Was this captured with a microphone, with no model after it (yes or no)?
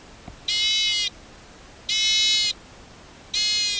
yes